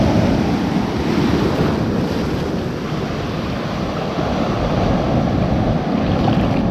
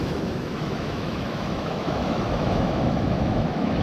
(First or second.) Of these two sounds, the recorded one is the first